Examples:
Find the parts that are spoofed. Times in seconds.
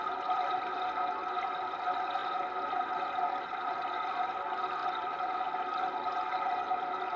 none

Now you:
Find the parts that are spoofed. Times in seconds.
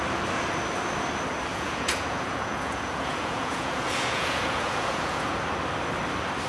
1.5-5.4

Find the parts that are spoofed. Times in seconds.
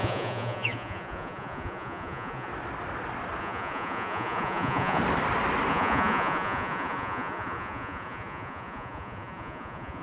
0.0-2.5; 3.4-5.0; 5.7-10.0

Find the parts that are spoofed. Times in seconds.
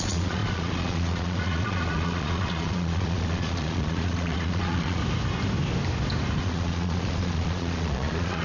0.0-5.0; 6.4-8.4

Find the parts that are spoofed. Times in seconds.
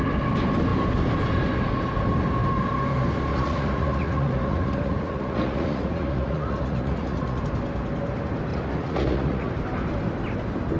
3.3-7.4; 8.5-9.5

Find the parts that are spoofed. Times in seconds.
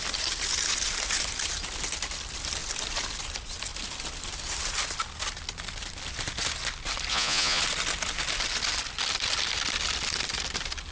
7.1-7.6